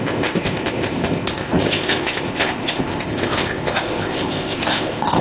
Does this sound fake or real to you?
fake